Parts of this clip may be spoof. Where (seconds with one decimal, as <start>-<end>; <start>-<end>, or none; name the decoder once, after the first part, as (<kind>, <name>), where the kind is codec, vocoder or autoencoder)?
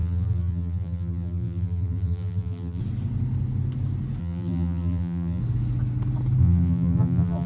0.0-2.8 (vocoder, BigVGAN v2); 4.2-5.4; 6.4-7.5